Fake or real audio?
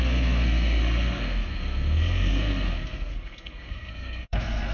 fake